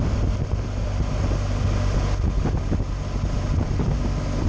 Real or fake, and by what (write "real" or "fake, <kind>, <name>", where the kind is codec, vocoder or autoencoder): real